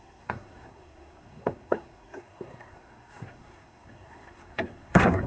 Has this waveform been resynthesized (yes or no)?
yes